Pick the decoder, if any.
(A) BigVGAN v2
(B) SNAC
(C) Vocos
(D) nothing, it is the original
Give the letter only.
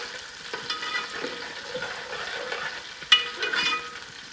D